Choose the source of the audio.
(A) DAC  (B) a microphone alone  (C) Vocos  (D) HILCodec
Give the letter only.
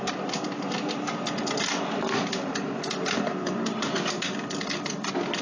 B